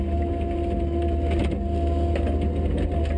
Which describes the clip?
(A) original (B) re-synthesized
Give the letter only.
A